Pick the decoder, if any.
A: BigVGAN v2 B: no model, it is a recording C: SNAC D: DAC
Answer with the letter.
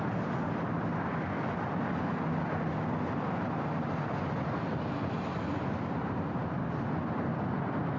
B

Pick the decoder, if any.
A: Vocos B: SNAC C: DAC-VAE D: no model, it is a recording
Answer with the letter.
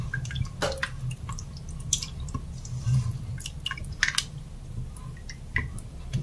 D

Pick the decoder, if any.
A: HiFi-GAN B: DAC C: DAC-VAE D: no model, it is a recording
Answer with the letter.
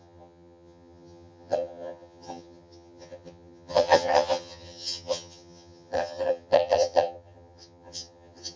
A